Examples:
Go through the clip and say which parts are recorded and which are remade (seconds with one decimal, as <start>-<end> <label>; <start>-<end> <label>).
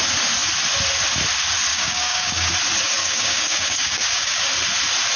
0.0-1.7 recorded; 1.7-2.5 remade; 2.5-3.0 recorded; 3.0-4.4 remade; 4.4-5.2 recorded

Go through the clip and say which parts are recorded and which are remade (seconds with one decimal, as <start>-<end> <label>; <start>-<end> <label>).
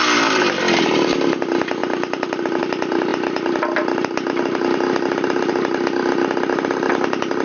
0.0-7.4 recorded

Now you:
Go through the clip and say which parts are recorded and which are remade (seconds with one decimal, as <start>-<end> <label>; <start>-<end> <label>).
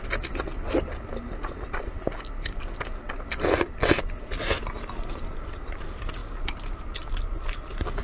0.0-8.0 recorded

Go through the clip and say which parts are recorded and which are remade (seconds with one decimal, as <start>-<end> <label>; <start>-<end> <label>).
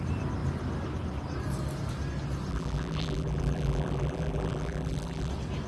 0.0-2.5 recorded; 2.5-5.3 remade; 5.3-5.7 recorded